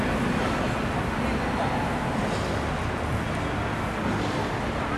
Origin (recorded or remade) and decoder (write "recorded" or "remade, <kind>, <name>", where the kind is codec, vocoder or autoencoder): recorded